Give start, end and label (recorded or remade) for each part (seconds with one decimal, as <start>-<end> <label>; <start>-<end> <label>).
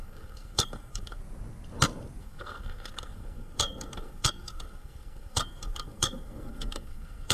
0.0-1.2 remade; 1.2-2.2 recorded; 2.2-7.3 remade